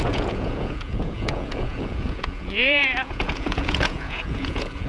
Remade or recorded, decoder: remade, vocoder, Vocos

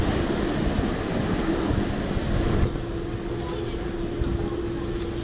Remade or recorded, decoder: recorded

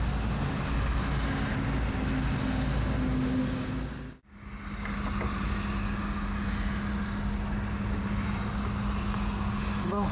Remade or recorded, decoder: recorded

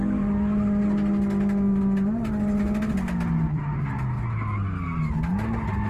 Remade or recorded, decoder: recorded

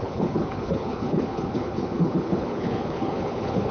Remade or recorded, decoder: remade, codec, HILCodec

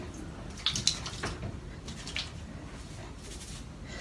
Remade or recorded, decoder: recorded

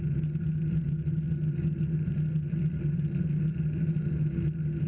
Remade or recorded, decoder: recorded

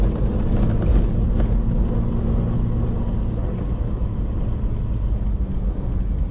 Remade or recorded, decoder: recorded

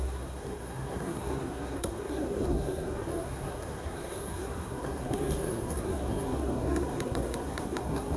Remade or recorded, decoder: remade, codec, SNAC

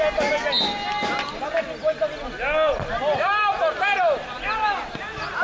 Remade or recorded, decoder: recorded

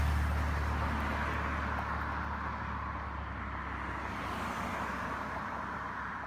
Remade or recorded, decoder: recorded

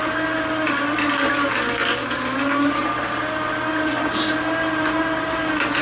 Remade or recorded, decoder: recorded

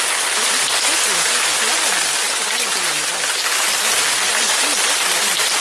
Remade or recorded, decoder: recorded